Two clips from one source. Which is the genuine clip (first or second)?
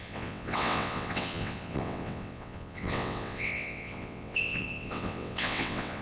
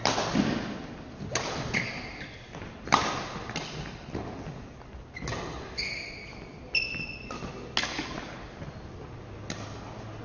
second